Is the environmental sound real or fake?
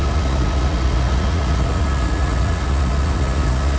fake